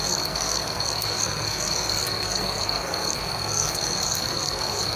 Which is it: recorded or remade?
remade